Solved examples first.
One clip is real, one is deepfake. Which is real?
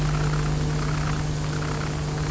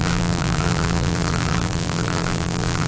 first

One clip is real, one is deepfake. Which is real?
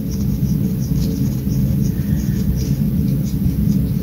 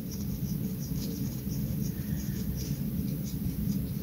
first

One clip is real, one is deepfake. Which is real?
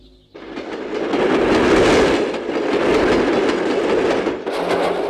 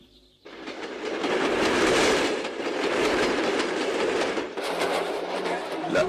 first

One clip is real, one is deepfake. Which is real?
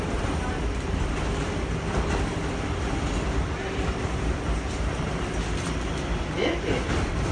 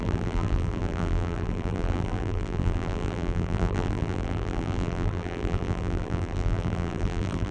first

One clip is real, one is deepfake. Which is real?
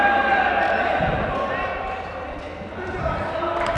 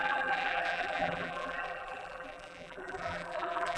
first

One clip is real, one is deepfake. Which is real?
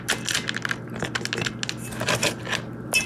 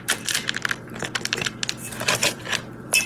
first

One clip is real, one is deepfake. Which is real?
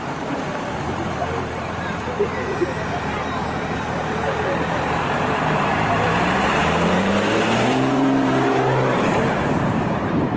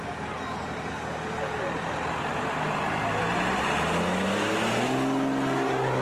second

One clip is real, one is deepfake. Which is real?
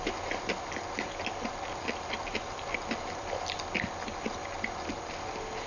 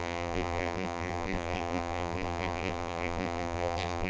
first